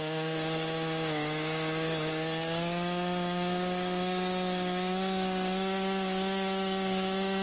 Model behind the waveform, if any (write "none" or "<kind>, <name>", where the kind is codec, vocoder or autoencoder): codec, DAC